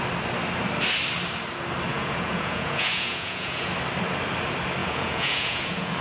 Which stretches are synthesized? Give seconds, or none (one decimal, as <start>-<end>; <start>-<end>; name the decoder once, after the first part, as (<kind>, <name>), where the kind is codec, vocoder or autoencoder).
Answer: 1.9-3.7 (vocoder, Vocos); 4.8-6.0